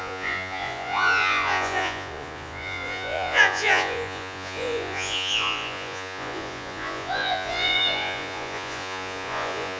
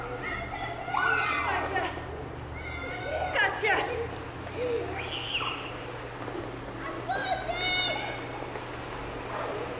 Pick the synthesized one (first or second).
first